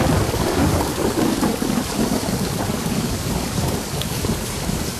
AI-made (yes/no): yes